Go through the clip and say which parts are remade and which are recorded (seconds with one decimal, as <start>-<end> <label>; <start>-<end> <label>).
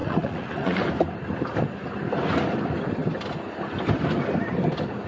0.0-0.8 remade; 0.8-5.1 recorded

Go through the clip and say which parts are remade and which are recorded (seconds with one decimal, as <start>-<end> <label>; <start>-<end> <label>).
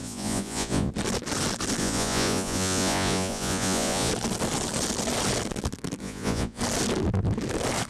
0.0-0.9 remade; 0.9-1.8 recorded; 1.8-4.1 remade; 4.1-6.0 recorded; 6.0-6.6 remade; 6.6-7.9 recorded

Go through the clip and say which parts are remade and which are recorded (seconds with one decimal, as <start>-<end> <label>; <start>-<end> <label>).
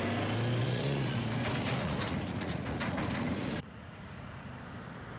0.0-0.6 recorded; 0.6-1.2 remade; 1.2-1.6 recorded; 1.6-4.5 remade; 4.5-5.2 recorded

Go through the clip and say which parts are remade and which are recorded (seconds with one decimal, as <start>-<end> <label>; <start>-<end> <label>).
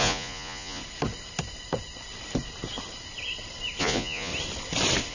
0.0-0.8 remade; 0.8-3.8 recorded; 3.8-4.3 remade; 4.3-5.1 recorded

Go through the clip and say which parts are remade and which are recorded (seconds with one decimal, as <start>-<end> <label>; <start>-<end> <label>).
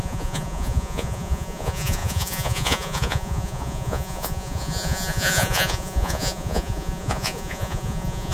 0.0-8.3 remade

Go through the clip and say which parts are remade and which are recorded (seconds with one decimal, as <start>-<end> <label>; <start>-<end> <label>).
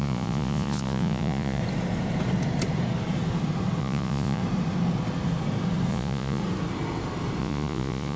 0.0-1.6 remade; 1.6-3.8 recorded; 3.8-4.4 remade; 4.4-5.9 recorded; 5.9-6.4 remade; 6.4-7.4 recorded; 7.4-8.2 remade